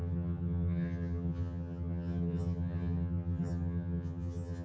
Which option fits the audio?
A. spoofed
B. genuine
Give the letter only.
A